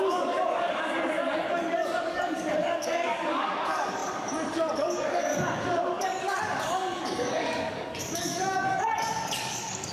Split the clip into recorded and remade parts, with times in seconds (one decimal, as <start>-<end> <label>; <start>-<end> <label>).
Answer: 0.0-9.9 remade